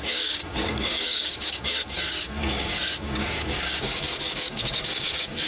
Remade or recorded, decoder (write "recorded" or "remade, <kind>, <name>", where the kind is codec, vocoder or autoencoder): remade, codec, DAC